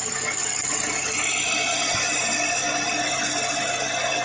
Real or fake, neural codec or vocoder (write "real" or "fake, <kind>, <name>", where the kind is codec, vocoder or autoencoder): real